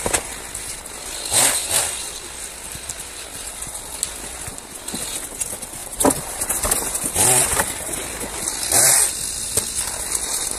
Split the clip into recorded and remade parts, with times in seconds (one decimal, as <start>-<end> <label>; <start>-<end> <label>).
0.0-1.6 recorded; 1.6-2.1 remade; 2.1-5.8 recorded; 5.8-6.6 remade; 6.6-10.6 recorded